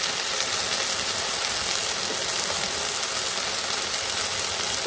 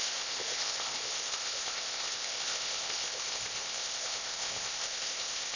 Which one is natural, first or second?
first